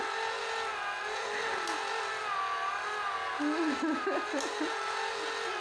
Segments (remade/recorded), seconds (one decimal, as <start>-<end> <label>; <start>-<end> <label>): 0.0-5.6 recorded

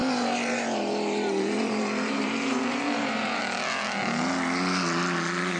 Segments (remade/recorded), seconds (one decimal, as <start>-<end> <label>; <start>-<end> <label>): 0.0-3.4 remade; 3.4-5.6 recorded

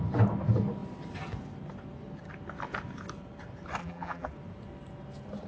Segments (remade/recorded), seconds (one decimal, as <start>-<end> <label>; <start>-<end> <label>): 0.0-3.8 recorded; 3.8-4.3 remade; 4.3-5.5 recorded

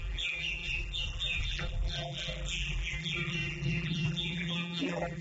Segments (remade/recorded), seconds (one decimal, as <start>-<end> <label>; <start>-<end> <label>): 0.0-5.2 remade

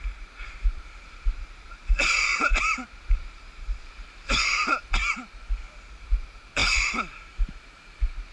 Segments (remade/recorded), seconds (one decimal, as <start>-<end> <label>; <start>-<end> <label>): 0.0-5.0 remade; 5.0-6.0 recorded; 6.0-8.3 remade

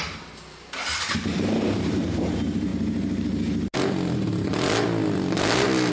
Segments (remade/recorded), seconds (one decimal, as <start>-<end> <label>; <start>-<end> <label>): 0.0-1.1 recorded; 1.1-2.7 remade; 2.7-5.9 recorded

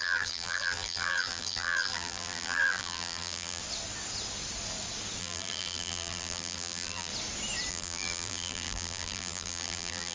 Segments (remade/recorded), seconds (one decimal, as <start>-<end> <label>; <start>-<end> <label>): 0.0-3.6 remade; 3.6-5.2 recorded; 5.2-7.1 remade; 7.1-7.7 recorded; 7.7-10.1 remade